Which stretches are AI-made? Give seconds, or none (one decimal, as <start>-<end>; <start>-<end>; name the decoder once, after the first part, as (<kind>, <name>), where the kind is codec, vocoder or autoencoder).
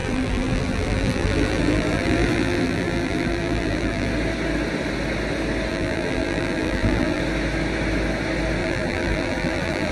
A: 0.0-4.1 (vocoder, BigVGAN v2); 5.7-7.2; 8.6-9.9